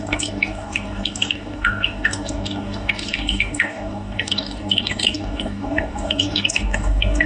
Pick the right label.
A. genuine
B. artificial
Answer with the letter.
B